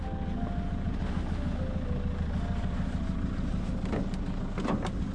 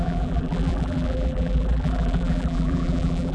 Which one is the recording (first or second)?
first